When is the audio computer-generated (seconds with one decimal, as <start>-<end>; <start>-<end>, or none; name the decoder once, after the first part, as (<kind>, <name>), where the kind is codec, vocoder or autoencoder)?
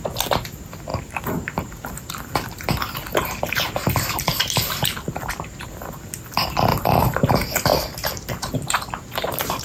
0.9-2.1 (vocoder, BigVGAN v2); 6.7-7.3